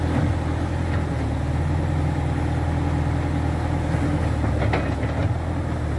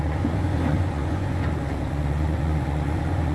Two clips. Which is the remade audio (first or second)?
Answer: second